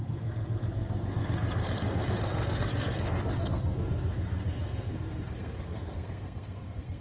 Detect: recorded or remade remade